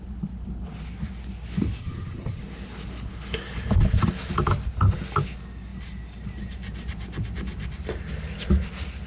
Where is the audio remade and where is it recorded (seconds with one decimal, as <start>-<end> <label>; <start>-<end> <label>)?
0.0-1.8 recorded; 1.8-2.4 remade; 2.4-9.1 recorded